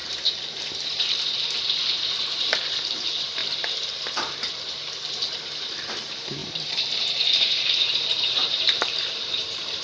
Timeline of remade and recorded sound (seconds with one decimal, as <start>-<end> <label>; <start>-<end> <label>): 0.0-9.8 remade